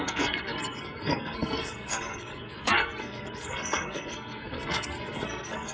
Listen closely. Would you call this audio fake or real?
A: fake